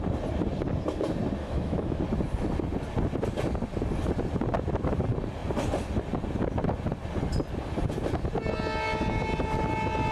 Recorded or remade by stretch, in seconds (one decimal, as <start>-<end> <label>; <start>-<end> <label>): 0.0-1.4 recorded; 1.4-2.0 remade; 2.0-10.1 recorded